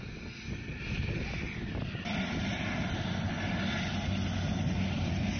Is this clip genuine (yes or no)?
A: yes